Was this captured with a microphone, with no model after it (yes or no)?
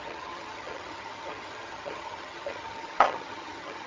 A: no